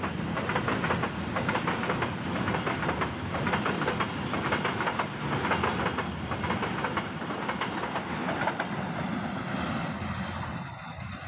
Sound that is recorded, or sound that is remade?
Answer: recorded